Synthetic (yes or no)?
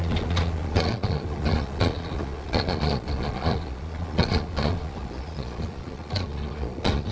yes